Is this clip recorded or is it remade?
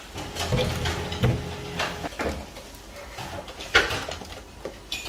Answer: recorded